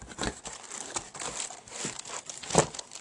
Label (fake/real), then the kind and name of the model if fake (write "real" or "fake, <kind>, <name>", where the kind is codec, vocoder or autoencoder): real